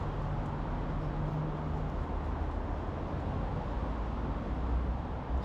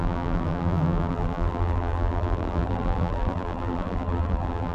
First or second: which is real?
first